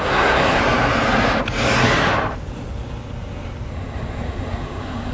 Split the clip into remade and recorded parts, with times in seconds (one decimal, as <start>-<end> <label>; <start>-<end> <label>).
0.0-0.6 remade; 0.6-3.7 recorded; 3.7-5.1 remade